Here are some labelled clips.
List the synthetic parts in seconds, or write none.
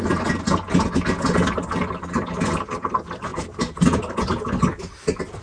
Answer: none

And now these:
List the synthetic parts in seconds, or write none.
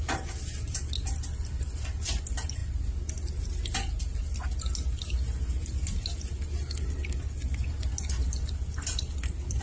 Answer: none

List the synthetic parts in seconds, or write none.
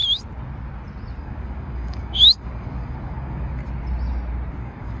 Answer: 1.2-3.6; 4.6-5.0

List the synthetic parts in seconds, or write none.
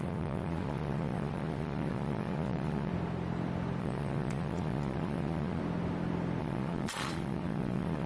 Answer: 0.0-2.9; 3.8-5.6; 6.4-8.1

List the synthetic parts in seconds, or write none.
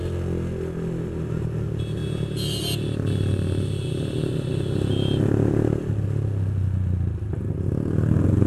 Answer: none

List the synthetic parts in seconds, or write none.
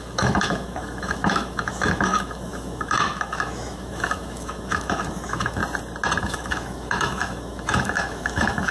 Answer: 0.0-5.6; 6.2-8.7